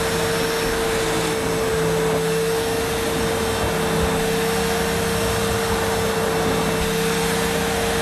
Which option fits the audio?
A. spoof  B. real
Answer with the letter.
B